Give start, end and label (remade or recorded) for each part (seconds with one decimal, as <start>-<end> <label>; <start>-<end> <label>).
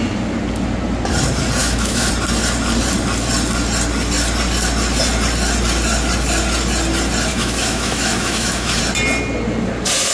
0.0-1.6 recorded; 1.6-2.1 remade; 2.1-7.3 recorded; 7.3-8.8 remade; 8.8-10.1 recorded